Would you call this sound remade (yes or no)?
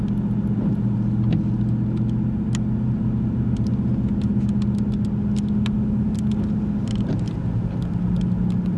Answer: no